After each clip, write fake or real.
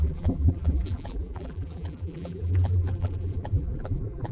fake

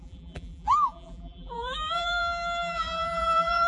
fake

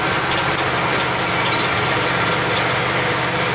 real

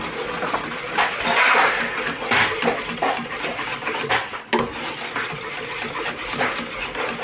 real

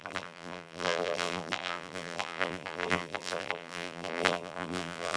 fake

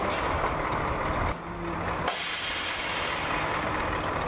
real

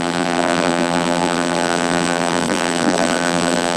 fake